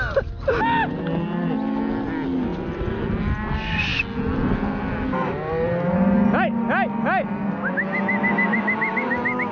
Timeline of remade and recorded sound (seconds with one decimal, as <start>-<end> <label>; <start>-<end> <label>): 0.0-9.5 recorded